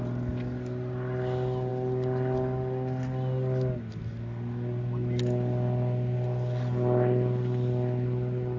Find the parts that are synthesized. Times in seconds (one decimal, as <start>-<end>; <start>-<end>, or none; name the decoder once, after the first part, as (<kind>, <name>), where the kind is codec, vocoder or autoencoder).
none